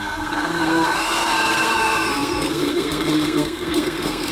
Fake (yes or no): yes